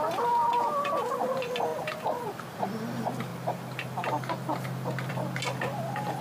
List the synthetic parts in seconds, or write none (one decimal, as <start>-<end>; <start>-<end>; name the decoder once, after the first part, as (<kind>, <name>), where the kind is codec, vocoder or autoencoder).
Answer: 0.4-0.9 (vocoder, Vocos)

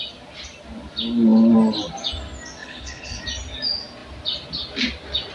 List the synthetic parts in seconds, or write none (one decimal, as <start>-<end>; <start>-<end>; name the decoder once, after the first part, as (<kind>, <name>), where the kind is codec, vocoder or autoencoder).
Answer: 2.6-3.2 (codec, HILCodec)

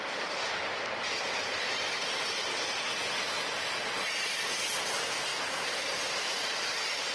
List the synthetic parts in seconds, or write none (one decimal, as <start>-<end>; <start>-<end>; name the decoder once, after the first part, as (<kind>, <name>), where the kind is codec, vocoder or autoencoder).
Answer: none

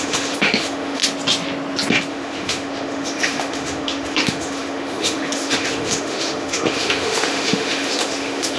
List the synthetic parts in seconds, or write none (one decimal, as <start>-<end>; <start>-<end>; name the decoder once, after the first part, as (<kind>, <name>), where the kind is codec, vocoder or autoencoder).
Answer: 0.0-1.0 (autoencoder, DAC-VAE); 2.1-8.6

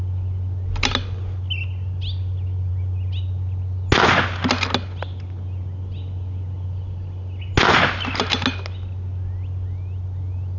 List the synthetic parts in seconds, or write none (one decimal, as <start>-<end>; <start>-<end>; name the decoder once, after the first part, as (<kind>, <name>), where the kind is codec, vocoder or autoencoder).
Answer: none

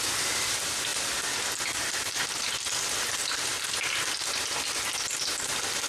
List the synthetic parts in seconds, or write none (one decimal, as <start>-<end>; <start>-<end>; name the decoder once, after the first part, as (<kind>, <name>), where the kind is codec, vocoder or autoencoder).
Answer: 0.0-0.9 (vocoder, BigVGAN v2); 2.8-3.5

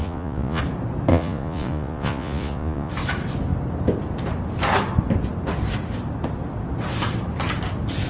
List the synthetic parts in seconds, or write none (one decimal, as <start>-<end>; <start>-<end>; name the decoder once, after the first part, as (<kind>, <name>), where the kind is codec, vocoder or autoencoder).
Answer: 0.0-0.6 (vocoder, Vocos); 1.1-2.9

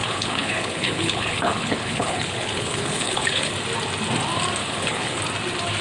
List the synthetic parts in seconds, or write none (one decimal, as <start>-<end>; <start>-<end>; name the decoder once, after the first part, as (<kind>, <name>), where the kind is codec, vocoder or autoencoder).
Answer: 0.0-3.5 (codec, HILCodec); 4.6-5.2